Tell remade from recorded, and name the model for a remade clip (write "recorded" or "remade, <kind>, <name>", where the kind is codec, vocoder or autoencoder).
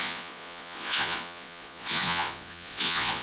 remade, vocoder, Vocos